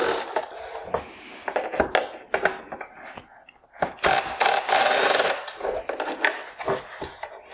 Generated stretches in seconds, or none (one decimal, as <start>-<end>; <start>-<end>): none